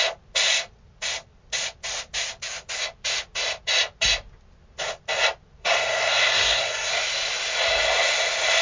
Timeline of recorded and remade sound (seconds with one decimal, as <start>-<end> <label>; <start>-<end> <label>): 0.0-5.6 recorded; 5.6-6.9 remade; 6.9-8.6 recorded